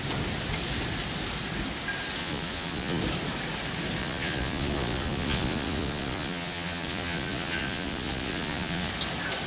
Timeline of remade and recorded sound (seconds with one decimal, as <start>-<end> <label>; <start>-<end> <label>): 0.0-2.2 recorded; 2.2-3.0 remade; 3.0-4.0 recorded; 4.0-8.9 remade; 8.9-9.5 recorded